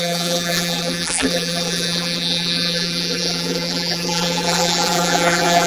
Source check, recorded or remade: remade